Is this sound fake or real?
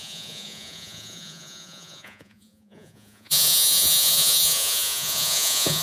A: fake